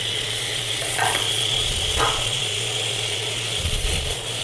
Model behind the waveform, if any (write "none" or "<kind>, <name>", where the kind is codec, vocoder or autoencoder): vocoder, Vocos